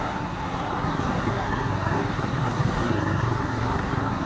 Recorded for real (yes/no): no